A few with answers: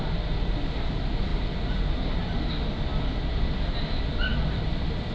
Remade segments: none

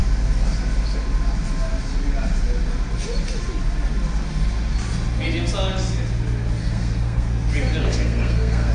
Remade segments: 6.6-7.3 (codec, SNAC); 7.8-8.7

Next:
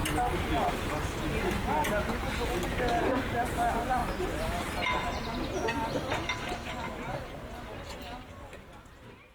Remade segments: none

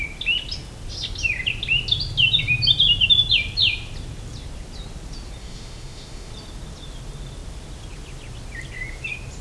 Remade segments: 5.4-6.3 (autoencoder, DAC-VAE)

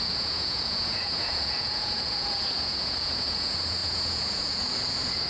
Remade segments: 0.0-5.3 (vocoder, Vocos)

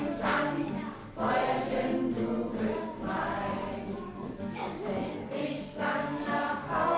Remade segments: 0.0-1.0 (codec, DAC); 2.5-7.0